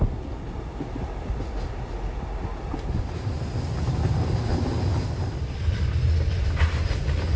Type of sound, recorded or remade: recorded